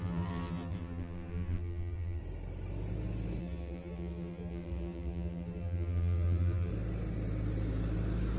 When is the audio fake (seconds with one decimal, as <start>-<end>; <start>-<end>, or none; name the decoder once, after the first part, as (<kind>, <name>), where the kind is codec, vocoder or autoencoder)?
0.0-2.2 (vocoder, BigVGAN v2); 3.4-6.7